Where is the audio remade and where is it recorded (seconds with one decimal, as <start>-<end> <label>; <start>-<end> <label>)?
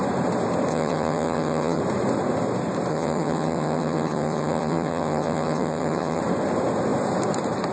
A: 0.0-0.7 recorded; 0.7-1.8 remade; 1.8-2.9 recorded; 2.9-6.2 remade; 6.2-7.7 recorded